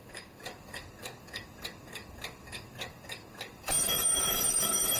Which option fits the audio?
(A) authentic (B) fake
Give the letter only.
B